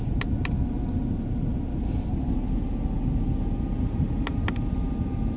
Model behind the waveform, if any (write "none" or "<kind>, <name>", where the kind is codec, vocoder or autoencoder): none